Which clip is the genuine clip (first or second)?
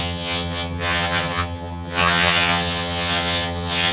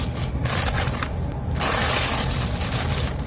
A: second